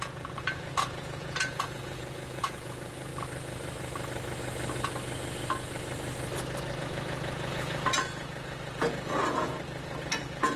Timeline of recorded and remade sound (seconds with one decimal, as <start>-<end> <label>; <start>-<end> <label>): 0.0-3.1 remade; 3.1-6.8 recorded; 6.8-9.5 remade; 9.5-10.2 recorded; 10.2-10.6 remade